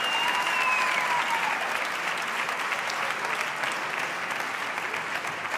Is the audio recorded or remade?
recorded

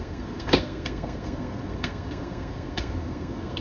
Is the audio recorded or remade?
remade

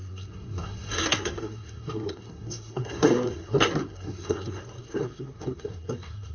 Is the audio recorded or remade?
remade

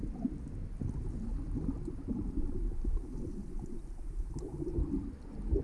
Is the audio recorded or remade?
recorded